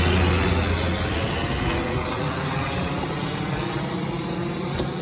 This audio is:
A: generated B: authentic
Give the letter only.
B